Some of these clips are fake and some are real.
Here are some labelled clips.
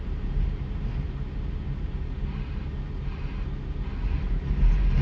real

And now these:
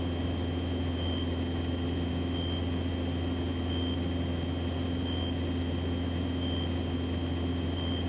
real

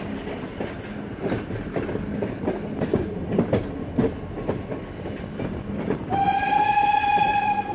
real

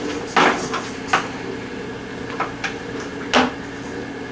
real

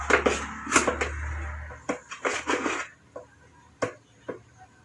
real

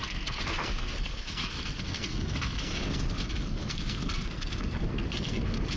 fake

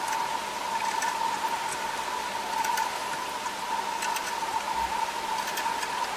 real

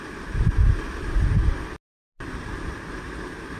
real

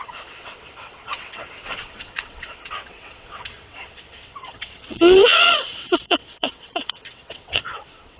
fake